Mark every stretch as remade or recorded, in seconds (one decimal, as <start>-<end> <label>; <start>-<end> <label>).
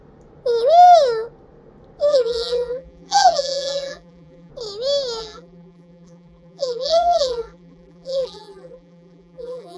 0.0-2.1 recorded; 2.1-4.5 remade; 4.5-5.2 recorded; 5.2-9.8 remade